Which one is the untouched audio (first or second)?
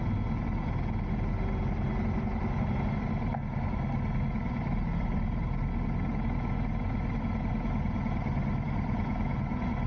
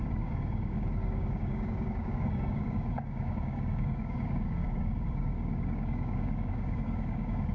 first